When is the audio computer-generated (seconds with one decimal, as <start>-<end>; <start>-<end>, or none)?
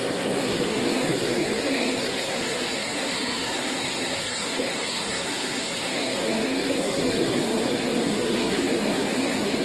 0.0-9.6